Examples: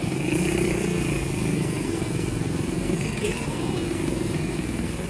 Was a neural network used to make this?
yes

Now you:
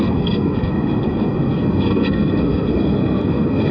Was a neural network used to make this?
yes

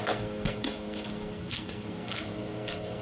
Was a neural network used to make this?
yes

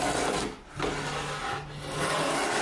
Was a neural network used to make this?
no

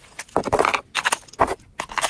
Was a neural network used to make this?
no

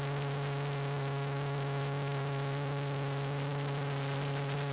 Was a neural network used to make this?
no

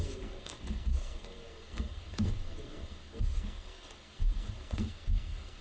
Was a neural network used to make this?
yes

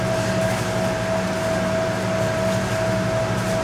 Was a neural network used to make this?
no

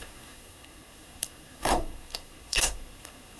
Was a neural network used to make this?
yes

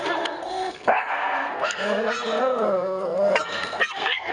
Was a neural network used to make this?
yes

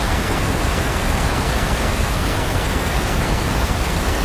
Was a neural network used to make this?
yes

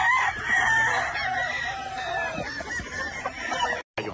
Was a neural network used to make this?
no